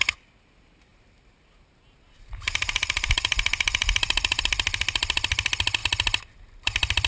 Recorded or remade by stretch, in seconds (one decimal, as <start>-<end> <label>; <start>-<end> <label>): 0.0-0.9 recorded; 0.9-4.4 remade; 4.4-7.1 recorded